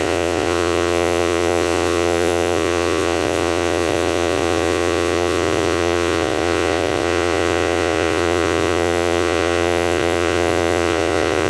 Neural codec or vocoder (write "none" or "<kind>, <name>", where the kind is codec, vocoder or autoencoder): vocoder, Vocos